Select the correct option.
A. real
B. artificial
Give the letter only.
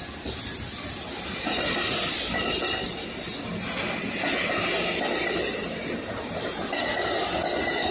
A